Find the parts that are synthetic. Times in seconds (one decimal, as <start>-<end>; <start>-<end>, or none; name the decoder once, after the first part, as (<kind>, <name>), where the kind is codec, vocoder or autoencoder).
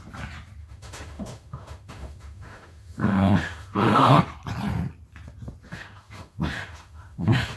0.6-4.2 (autoencoder, DAC-VAE); 5.7-7.6